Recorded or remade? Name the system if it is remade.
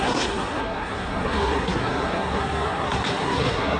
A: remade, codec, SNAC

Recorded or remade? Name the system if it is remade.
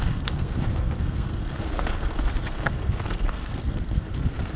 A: remade, codec, SNAC